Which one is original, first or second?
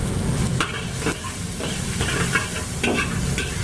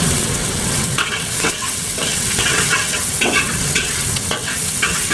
first